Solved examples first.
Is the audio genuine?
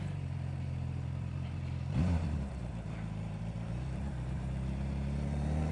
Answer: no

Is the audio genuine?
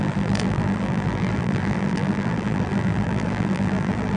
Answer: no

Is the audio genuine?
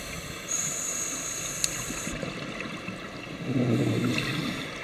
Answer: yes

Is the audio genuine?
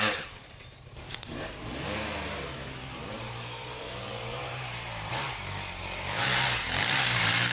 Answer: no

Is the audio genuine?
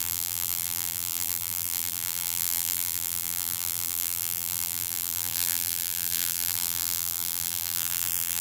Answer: no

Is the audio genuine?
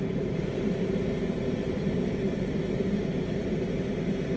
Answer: no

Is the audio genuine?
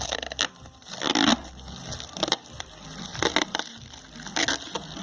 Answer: yes